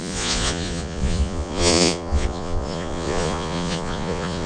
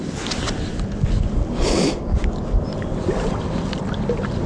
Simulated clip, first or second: first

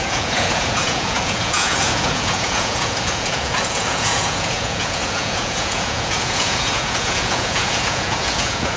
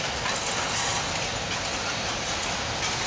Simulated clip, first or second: first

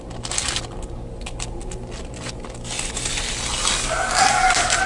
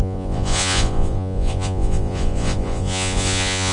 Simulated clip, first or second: second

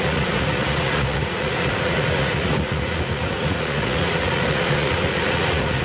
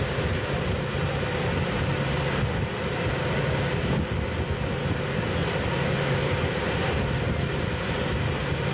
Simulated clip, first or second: first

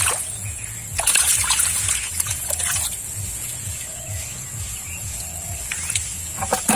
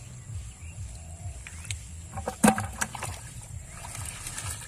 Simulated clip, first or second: first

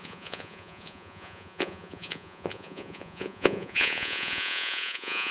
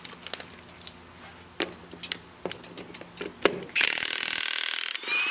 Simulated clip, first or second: first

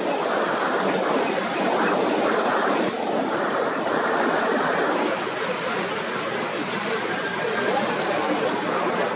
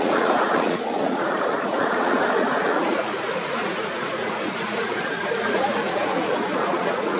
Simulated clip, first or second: second